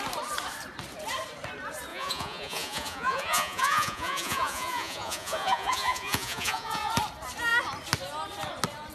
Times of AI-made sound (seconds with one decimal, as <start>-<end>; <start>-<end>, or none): 1.9-6.9